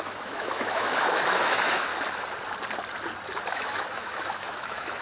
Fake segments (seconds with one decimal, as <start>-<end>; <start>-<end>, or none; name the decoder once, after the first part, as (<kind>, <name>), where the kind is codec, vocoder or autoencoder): 0.0-1.9 (autoencoder, DAC-VAE); 3.5-5.0